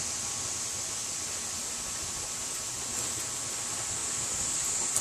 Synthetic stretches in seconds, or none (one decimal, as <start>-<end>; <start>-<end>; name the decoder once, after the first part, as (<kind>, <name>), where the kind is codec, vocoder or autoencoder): none